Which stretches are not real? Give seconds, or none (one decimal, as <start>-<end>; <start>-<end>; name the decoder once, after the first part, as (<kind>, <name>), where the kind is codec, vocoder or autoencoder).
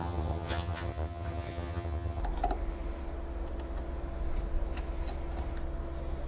0.0-2.2 (vocoder, HiFi-GAN)